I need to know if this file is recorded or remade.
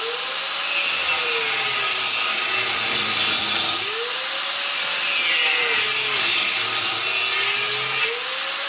recorded